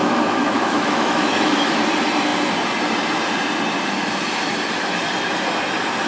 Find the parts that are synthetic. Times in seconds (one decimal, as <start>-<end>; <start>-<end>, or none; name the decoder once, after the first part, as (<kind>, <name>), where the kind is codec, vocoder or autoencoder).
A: 0.0-1.8 (autoencoder, DAC-VAE)